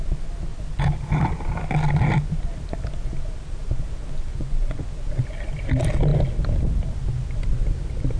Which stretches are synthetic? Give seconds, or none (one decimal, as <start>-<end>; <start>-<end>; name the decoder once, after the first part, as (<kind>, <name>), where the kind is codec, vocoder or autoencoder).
4.3-4.8 (vocoder, Vocos)